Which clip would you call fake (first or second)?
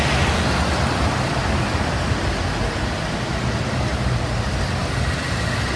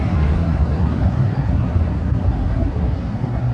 second